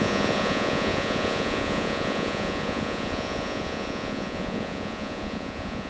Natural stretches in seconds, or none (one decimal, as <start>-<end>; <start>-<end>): none